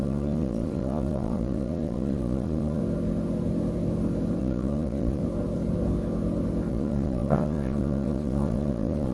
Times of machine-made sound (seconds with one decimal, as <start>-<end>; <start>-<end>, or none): 0.0-2.8; 4.4-5.2; 6.7-9.1